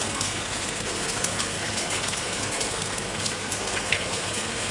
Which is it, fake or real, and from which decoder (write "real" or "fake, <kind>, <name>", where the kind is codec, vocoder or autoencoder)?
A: fake, codec, SNAC